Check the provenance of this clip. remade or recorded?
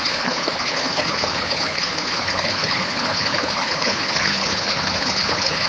remade